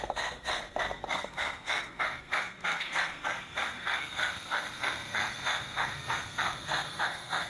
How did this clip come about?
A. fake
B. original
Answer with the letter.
A